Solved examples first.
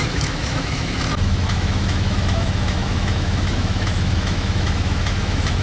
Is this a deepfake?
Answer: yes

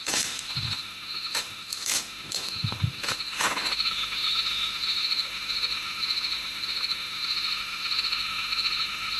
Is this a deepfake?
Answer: yes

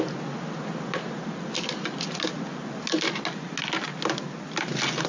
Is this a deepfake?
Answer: no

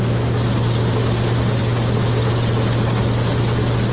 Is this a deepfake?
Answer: no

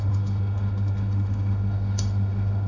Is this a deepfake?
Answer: yes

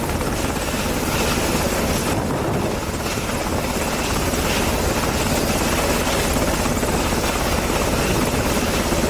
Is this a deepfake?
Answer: no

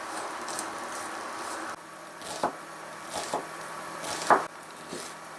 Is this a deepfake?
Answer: no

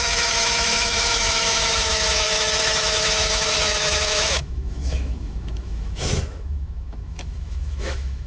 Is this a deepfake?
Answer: yes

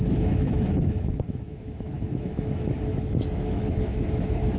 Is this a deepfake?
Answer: yes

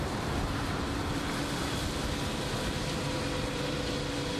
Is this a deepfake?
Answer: no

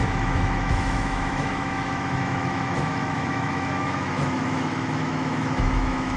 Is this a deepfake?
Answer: yes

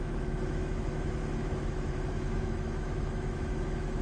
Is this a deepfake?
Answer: yes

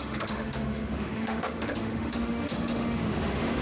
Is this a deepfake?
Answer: yes